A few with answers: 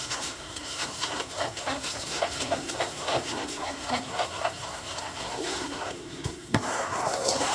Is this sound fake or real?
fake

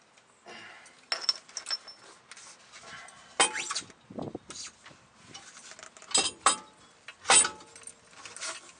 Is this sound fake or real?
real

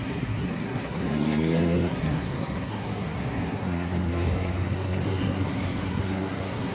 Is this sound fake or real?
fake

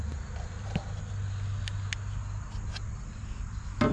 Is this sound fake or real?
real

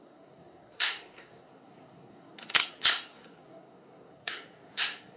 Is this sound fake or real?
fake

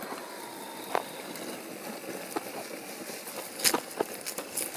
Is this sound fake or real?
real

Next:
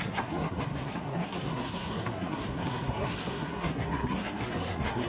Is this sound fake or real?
fake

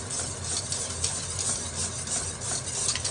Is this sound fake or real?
real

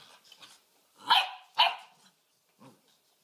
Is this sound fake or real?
real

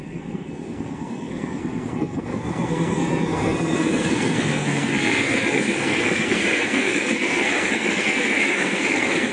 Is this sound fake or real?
fake